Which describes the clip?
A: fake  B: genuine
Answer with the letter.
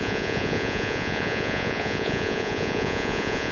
A